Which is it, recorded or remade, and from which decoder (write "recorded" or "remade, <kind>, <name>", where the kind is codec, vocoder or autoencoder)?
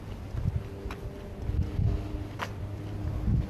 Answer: recorded